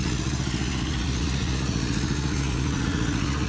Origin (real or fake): fake